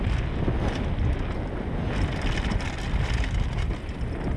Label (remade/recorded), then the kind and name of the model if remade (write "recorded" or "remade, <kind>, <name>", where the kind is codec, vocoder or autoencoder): recorded